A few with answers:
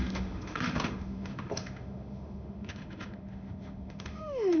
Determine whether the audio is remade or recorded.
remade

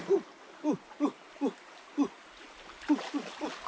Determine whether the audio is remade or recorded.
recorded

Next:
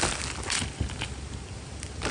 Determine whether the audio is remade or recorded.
recorded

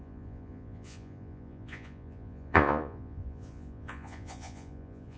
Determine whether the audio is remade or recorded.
remade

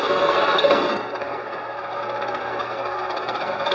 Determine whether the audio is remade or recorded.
remade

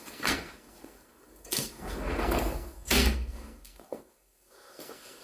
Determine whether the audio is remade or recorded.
remade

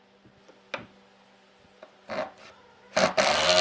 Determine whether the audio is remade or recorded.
recorded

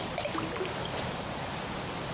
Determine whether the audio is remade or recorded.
recorded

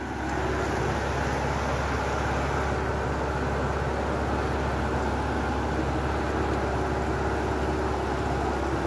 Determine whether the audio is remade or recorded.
recorded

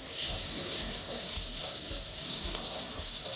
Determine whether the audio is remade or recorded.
remade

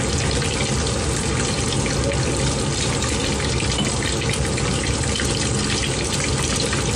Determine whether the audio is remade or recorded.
recorded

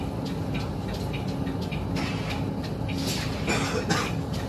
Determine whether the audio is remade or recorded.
recorded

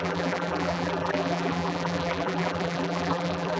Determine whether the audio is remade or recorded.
remade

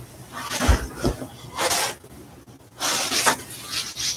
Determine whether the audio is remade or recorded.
recorded